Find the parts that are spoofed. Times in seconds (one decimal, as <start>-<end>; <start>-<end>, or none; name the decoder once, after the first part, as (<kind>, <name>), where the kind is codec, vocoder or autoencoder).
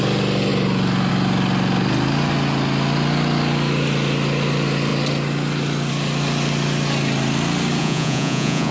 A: 7.8-8.7 (vocoder, Vocos)